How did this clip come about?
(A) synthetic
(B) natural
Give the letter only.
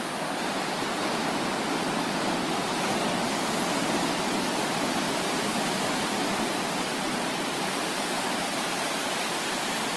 B